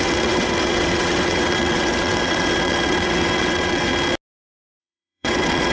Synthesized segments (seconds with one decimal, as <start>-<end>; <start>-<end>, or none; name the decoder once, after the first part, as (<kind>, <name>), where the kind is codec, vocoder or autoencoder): 0.0-3.9 (vocoder, WaveNeXt); 4.8-5.7